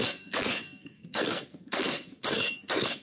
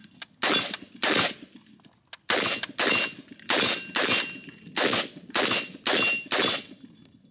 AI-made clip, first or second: first